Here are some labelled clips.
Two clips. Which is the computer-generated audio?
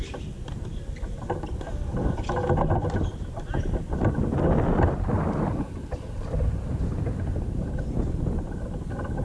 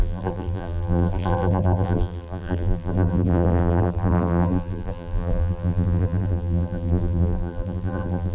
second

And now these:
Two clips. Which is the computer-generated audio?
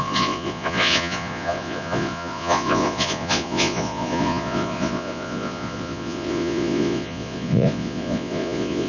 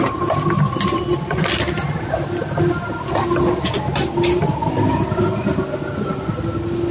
first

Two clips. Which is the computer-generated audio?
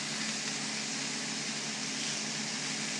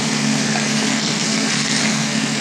second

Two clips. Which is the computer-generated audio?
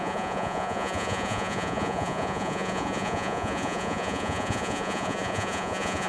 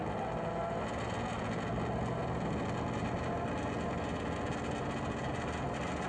first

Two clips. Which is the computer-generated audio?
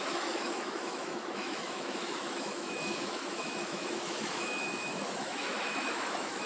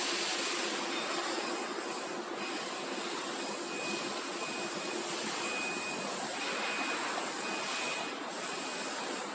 first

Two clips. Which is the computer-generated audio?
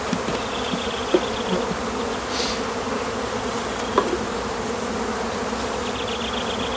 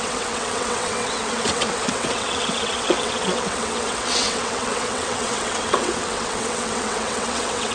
second